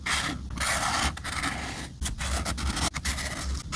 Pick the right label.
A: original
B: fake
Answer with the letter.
A